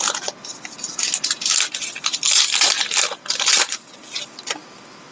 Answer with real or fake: real